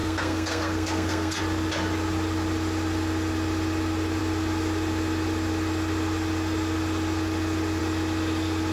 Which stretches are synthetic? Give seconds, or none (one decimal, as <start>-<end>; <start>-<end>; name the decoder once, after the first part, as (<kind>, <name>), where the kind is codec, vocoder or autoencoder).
0.0-1.4 (codec, SNAC)